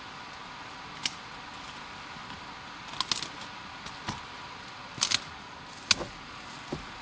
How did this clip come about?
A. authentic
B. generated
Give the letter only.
A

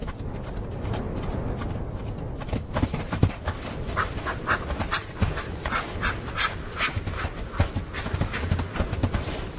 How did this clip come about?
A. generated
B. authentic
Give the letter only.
B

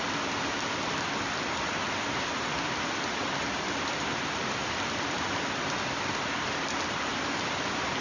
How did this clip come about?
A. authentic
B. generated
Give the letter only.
A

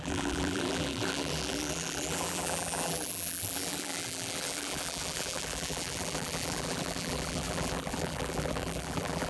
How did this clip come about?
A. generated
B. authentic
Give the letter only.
A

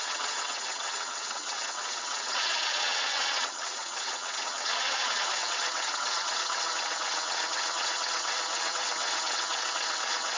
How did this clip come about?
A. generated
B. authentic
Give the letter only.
A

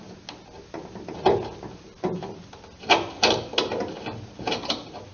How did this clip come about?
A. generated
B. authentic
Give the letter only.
B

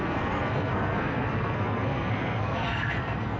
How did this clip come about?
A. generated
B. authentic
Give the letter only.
A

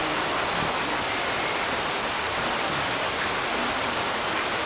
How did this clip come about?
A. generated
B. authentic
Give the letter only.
B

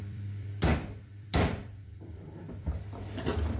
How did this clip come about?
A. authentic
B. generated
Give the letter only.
B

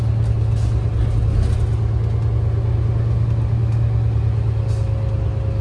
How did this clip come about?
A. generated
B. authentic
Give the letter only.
B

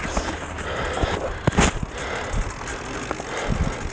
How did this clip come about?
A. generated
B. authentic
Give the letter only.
B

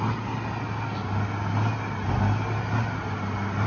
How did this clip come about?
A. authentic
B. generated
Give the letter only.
A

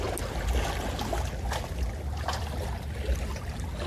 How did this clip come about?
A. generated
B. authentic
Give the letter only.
B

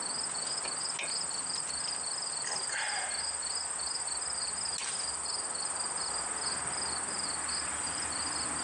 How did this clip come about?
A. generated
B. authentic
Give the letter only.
B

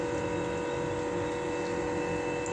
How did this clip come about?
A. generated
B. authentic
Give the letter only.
B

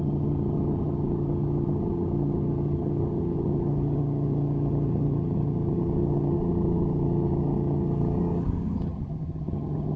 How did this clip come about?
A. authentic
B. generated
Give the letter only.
B